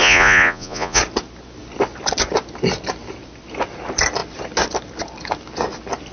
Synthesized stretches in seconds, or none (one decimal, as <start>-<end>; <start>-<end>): 0.0-1.0